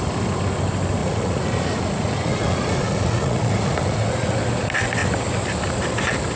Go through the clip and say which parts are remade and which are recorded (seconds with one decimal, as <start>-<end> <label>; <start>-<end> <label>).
0.0-1.0 recorded; 1.0-4.4 remade; 4.4-6.3 recorded